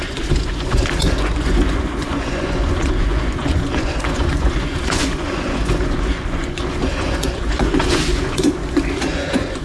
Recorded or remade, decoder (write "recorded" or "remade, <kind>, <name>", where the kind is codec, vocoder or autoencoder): remade, vocoder, Vocos